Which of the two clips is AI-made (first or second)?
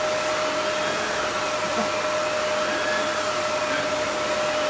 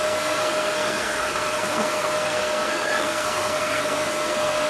second